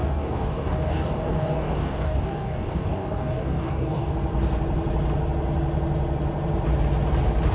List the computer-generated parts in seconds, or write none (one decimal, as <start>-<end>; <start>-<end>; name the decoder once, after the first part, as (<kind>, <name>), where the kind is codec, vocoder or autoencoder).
0.0-4.1 (codec, DAC)